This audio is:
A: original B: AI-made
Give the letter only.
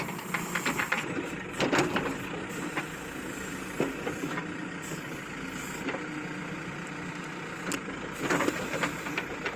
A